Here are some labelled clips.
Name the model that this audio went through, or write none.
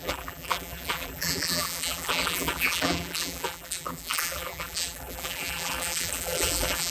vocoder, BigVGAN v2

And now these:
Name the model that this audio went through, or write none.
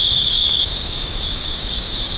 codec, DAC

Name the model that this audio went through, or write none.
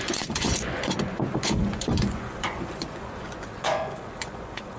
vocoder, Vocos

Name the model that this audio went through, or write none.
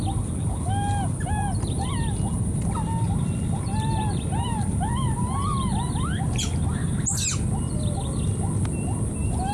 none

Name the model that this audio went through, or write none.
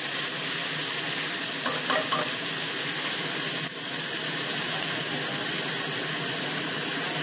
none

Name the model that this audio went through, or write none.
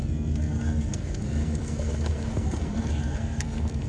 codec, SNAC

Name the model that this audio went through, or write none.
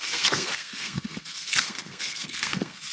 codec, SNAC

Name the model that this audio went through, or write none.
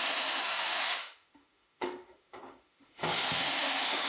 autoencoder, DAC-VAE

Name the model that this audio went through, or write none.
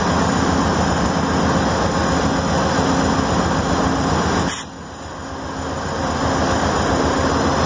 none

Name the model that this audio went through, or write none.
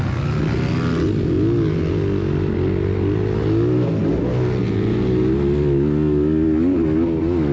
none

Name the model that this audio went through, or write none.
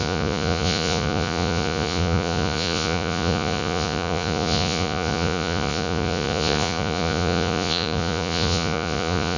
vocoder, Vocos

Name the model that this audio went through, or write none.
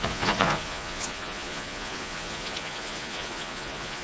vocoder, Vocos